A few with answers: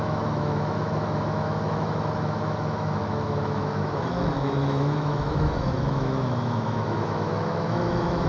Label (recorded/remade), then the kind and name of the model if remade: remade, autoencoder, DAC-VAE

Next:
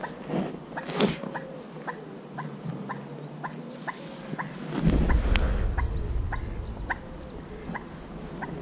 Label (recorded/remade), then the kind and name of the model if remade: recorded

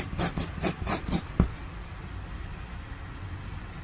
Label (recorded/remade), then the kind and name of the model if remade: recorded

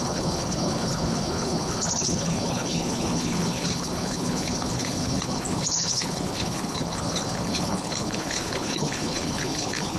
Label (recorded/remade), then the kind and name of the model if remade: remade, codec, HILCodec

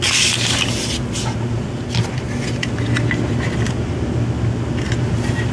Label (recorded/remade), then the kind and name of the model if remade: recorded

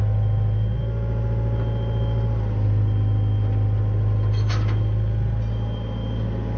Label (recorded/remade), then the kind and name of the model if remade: recorded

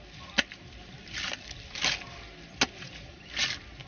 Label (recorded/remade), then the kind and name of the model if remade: recorded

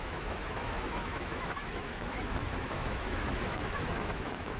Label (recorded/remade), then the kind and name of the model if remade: remade, autoencoder, DAC-VAE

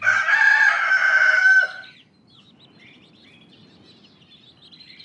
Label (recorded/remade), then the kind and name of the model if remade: recorded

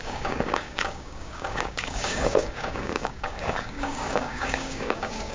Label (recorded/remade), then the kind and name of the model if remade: remade, codec, DAC